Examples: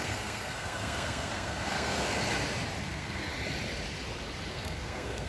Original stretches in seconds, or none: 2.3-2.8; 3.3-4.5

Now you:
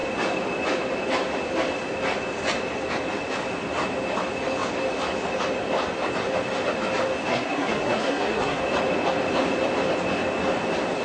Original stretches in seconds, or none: 0.0-7.3; 8.6-11.0

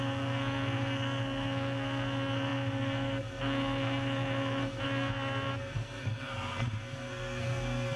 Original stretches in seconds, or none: none

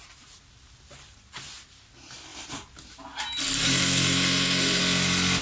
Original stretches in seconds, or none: 0.0-3.8; 4.8-5.4

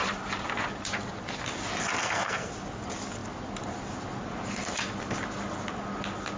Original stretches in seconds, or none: 0.0-2.0; 2.5-6.4

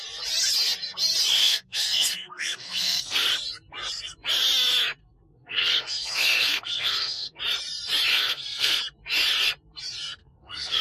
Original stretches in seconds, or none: 0.0-1.4; 3.3-5.0; 7.4-8.1; 8.8-10.2